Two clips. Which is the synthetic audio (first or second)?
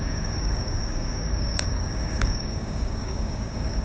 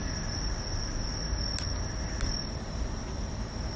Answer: first